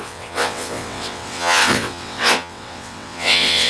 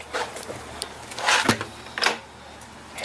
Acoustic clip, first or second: second